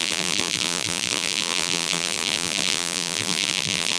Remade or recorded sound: remade